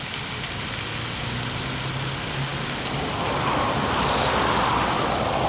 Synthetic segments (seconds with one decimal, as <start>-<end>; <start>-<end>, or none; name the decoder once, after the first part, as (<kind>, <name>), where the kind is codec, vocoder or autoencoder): none